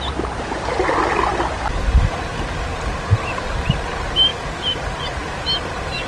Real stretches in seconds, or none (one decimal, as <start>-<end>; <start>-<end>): 0.0-6.1